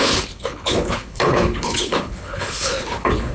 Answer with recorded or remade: remade